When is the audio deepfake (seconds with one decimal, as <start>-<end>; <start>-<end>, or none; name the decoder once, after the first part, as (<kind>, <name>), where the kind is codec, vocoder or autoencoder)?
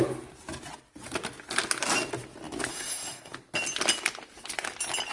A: 2.7-3.3 (codec, SNAC)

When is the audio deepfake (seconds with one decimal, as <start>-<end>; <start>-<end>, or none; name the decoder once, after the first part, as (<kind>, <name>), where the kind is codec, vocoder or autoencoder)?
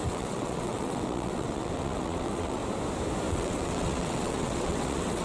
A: 0.0-2.6 (vocoder, WaveNeXt); 3.3-5.2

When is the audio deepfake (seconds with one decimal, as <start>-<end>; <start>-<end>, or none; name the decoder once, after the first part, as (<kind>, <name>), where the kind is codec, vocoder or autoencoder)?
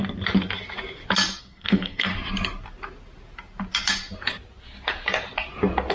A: 1.4-2.1 (codec, SNAC)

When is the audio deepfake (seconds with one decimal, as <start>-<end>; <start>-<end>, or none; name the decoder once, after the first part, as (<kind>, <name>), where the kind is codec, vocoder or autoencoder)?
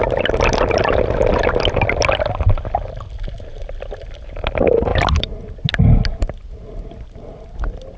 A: 4.9-5.5 (vocoder, BigVGAN v2)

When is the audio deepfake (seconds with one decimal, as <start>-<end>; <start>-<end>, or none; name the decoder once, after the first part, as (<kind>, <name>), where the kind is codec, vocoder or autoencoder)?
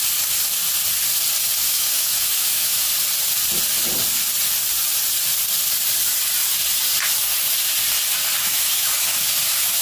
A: 1.6-2.9 (autoencoder, DAC-VAE); 8.4-9.8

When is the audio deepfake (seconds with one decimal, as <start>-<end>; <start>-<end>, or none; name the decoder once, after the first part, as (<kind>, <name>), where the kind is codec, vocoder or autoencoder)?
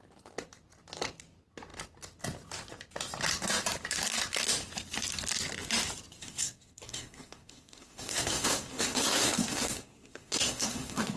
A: 6.2-11.2 (codec, SNAC)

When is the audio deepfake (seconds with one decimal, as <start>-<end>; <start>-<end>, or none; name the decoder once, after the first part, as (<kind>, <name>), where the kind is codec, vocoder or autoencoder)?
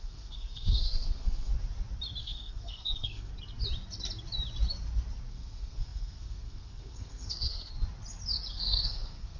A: 0.0-1.5 (codec, SNAC); 2.2-3.3; 5.3-7.7; 8.5-9.4